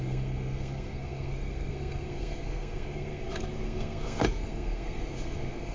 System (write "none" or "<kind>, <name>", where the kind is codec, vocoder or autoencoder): codec, SNAC